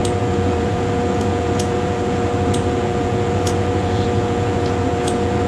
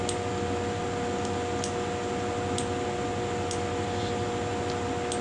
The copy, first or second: first